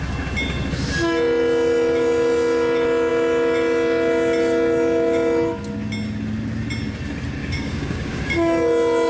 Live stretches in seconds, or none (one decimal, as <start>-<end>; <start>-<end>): 0.0-7.4; 8.2-9.1